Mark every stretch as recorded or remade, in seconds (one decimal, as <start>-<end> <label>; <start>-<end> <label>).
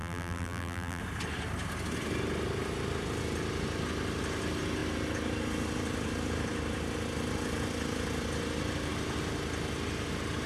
0.0-1.0 remade; 1.0-10.5 recorded